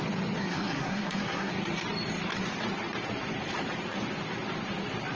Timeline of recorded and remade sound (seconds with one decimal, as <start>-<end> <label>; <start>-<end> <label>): 0.0-0.4 recorded; 0.4-1.5 remade; 1.5-5.2 recorded